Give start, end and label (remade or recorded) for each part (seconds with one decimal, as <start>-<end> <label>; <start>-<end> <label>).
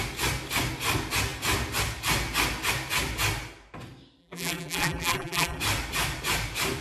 0.0-4.2 recorded; 4.2-5.6 remade; 5.6-6.8 recorded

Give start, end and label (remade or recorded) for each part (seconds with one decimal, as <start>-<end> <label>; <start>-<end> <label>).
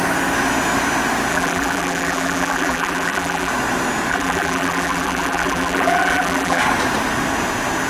0.0-1.3 recorded; 1.3-3.5 remade; 3.5-4.1 recorded; 4.1-6.6 remade; 6.6-7.9 recorded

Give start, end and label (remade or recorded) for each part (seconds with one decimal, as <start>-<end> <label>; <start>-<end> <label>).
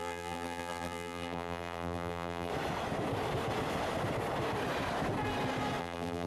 0.0-2.5 remade; 2.5-5.8 recorded; 5.8-6.3 remade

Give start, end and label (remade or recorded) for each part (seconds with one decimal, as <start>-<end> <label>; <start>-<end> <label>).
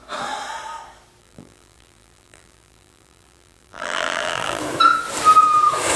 0.0-1.2 recorded; 1.2-4.6 remade; 4.6-6.0 recorded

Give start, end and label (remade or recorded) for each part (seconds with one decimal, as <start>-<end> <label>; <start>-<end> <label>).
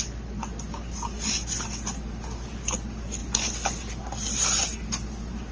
0.0-5.5 recorded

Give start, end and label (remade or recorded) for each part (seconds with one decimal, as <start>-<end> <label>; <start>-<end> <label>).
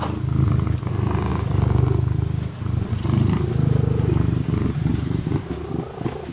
0.0-4.9 recorded; 4.9-5.4 remade; 5.4-6.3 recorded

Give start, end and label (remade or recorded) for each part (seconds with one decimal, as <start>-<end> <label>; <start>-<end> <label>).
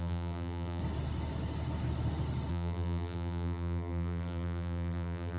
0.0-0.8 remade; 0.8-2.5 recorded; 2.5-5.4 remade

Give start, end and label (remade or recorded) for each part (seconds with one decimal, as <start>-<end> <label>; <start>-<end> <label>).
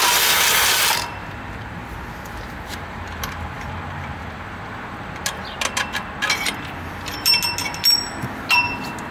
0.0-1.2 recorded; 1.2-1.8 remade; 1.8-2.7 recorded; 2.7-5.2 remade; 5.2-9.1 recorded